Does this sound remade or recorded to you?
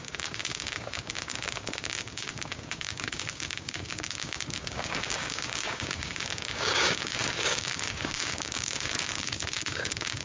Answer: remade